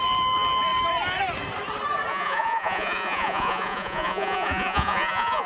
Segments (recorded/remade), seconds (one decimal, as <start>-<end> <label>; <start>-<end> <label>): 0.0-2.1 recorded; 2.1-5.5 remade